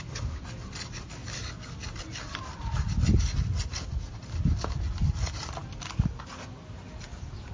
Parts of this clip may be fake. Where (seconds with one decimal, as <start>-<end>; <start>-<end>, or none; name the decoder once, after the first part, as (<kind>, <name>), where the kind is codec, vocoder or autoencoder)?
none